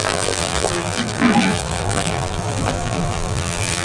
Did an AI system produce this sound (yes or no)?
yes